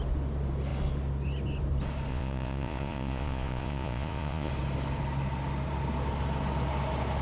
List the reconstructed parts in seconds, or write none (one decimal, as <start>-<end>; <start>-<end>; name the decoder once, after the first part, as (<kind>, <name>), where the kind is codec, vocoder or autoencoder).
2.1-4.5 (vocoder, Vocos)